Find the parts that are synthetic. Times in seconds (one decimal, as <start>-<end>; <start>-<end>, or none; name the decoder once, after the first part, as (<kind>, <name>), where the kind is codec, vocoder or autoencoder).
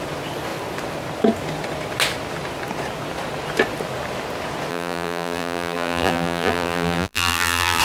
4.7-7.8 (vocoder, BigVGAN v2)